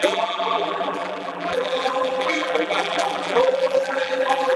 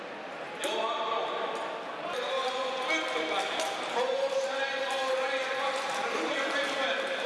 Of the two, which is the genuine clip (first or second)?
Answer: second